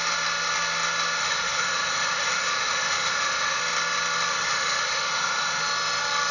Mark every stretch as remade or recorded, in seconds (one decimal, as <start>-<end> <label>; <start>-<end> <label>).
0.0-1.2 recorded; 1.2-3.6 remade; 3.6-4.3 recorded; 4.3-5.6 remade; 5.6-6.3 recorded